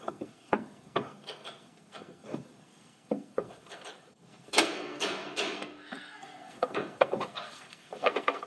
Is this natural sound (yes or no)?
no